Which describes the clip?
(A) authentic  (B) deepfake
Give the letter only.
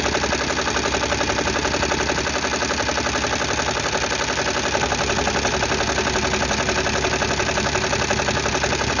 A